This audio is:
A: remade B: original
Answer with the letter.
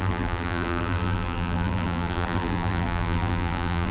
A